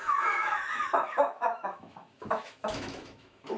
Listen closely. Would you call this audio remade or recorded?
remade